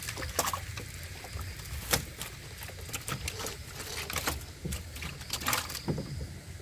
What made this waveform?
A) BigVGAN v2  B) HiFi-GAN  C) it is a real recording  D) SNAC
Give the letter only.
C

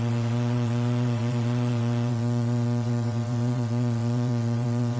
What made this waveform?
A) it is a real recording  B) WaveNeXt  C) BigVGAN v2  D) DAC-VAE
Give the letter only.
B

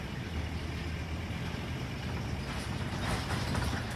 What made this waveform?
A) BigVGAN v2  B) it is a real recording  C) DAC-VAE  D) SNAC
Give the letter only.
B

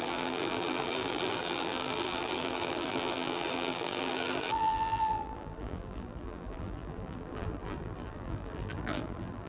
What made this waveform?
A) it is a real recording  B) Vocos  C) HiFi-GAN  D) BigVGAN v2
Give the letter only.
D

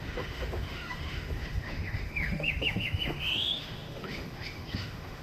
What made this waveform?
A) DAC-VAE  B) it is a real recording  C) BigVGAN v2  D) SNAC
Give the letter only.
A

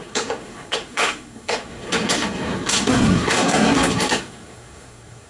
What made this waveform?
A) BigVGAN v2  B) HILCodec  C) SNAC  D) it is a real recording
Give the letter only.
C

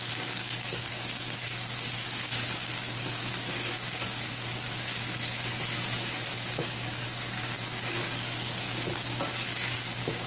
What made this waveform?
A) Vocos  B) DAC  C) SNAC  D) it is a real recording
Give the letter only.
B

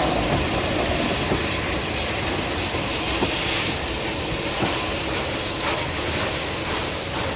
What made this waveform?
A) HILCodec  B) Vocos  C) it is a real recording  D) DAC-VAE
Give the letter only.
C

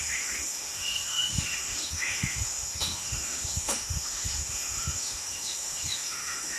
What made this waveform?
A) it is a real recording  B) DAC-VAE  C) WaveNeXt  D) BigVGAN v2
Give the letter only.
B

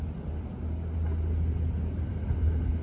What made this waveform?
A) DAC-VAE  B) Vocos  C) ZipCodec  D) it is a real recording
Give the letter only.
D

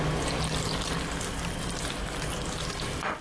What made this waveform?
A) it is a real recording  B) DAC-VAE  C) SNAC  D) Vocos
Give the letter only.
A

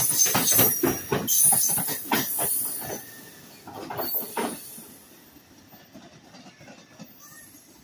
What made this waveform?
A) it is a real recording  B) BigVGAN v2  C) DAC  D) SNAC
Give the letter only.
A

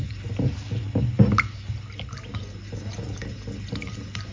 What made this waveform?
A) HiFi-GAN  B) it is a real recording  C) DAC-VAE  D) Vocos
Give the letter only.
B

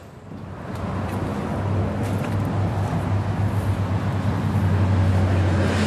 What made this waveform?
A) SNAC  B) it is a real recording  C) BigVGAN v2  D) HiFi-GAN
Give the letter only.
B